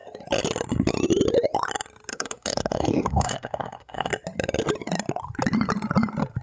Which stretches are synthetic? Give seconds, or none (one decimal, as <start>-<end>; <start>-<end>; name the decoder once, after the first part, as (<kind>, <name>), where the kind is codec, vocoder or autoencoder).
2.1-4.1 (codec, SNAC)